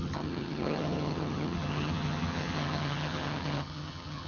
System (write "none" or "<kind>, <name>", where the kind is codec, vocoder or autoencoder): vocoder, HiFi-GAN